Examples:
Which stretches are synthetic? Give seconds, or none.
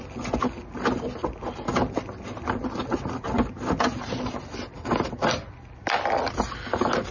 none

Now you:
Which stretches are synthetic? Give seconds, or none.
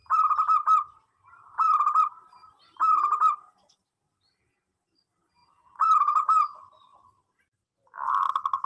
none